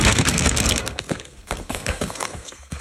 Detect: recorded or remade remade